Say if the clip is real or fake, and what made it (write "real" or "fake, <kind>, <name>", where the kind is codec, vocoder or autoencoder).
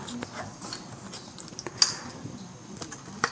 real